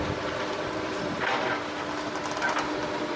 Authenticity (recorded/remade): recorded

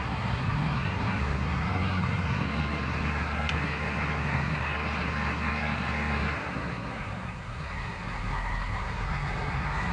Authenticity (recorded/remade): remade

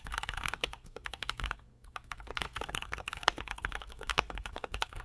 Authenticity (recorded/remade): remade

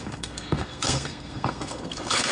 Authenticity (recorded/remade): remade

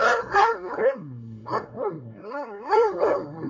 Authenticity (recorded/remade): remade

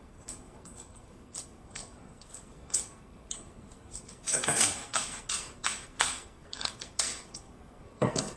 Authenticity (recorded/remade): remade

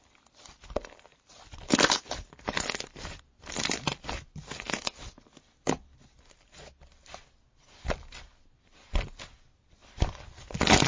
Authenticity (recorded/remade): recorded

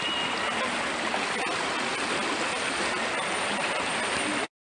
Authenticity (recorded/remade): recorded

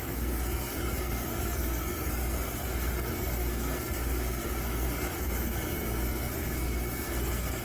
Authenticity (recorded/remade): remade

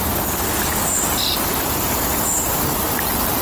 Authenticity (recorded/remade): recorded